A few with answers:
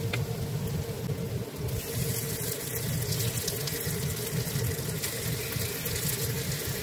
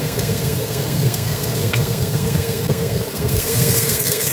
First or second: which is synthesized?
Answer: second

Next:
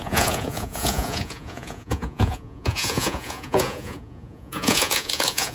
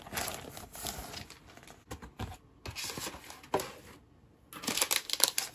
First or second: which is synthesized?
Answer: first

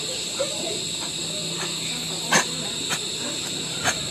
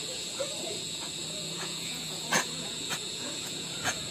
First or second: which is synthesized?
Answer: second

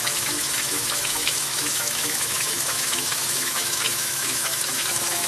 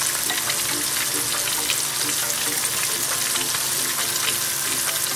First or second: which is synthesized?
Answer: first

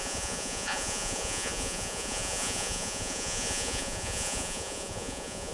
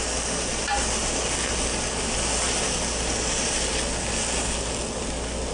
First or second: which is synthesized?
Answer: first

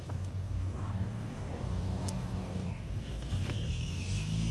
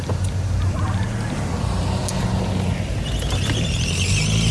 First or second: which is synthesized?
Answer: first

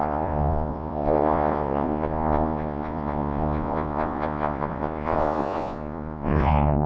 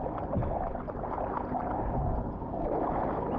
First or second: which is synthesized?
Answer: first